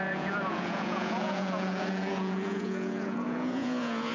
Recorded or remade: remade